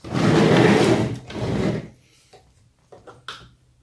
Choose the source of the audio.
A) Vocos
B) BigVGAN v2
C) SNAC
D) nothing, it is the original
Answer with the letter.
D